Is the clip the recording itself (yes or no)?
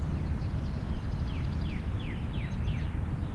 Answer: yes